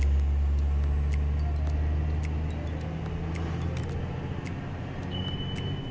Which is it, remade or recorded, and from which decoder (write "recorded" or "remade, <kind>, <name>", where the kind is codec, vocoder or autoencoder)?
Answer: recorded